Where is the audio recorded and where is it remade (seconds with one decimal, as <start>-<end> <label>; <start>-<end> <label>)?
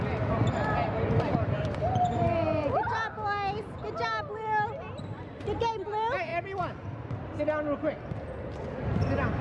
0.0-9.4 recorded